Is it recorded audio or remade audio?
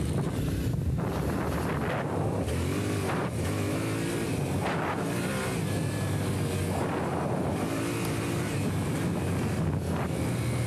recorded